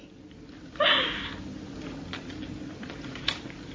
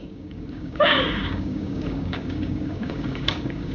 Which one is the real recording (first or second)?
first